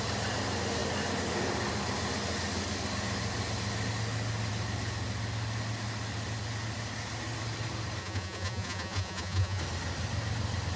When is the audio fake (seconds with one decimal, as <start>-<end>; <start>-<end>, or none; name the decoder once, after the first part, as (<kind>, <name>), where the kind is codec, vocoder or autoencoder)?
8.0-9.6 (vocoder, Vocos)